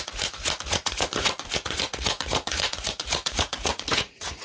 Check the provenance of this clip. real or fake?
fake